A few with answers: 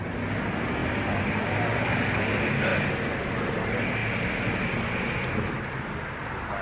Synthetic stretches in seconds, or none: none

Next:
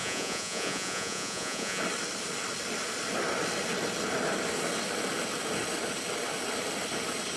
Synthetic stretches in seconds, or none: 0.0-1.8 (vocoder, Vocos)